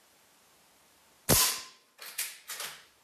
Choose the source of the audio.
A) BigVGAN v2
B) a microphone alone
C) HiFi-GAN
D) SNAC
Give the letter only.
A